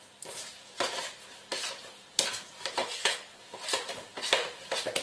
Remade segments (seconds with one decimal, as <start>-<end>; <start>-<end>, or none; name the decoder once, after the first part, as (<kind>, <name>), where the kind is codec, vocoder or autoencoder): 2.8-3.4 (codec, HILCodec)